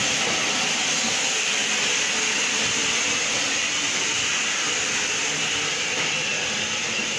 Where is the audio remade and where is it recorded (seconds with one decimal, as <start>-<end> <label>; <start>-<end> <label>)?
0.0-7.2 recorded